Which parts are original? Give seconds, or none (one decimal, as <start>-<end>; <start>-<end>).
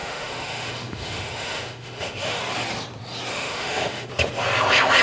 2.4-3.3; 4.1-5.0